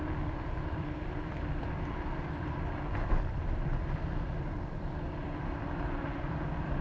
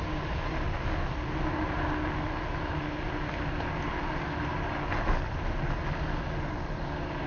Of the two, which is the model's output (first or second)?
first